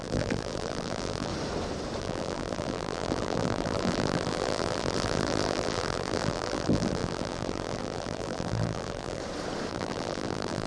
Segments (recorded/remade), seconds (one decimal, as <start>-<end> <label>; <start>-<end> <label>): 0.0-1.3 remade; 1.3-2.0 recorded; 2.0-9.2 remade; 9.2-9.7 recorded; 9.7-10.7 remade